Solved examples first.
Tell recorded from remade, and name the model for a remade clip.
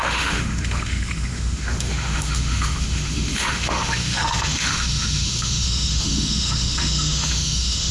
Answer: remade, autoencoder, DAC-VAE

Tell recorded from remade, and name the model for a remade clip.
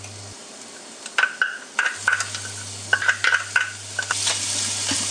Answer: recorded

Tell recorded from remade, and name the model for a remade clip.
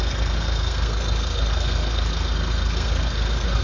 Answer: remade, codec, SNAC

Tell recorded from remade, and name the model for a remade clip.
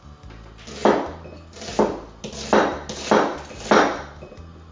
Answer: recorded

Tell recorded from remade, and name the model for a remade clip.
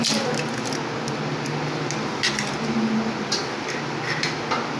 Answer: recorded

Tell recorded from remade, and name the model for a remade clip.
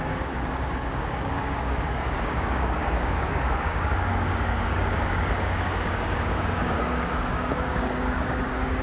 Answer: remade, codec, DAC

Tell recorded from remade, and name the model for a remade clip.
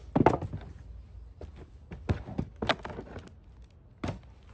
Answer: recorded